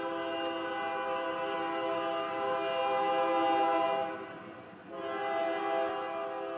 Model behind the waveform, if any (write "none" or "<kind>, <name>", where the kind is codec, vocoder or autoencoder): none